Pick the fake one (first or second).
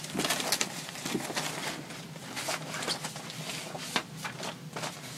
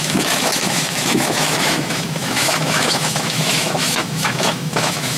second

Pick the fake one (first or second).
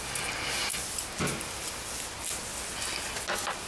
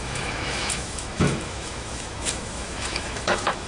second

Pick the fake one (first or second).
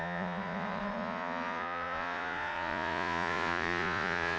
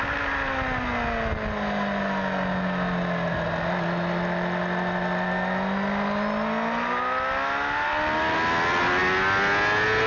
first